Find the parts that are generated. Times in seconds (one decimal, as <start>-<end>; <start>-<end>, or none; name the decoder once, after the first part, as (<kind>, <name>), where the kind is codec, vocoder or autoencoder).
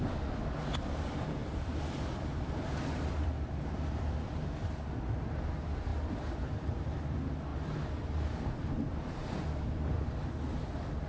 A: 1.4-4.8 (vocoder, BigVGAN v2); 5.9-6.7; 7.5-9.9